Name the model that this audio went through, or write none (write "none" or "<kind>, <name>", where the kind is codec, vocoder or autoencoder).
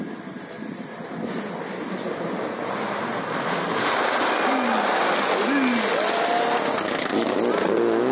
none